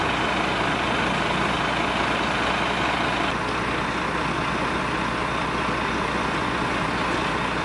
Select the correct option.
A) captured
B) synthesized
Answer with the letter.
A